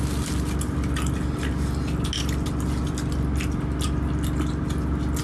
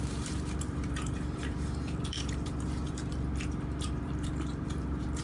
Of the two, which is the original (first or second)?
first